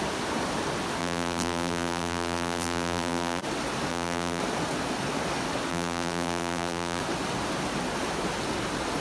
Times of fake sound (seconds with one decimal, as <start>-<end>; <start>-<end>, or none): 1.0-3.4; 3.9-4.4; 5.7-7.0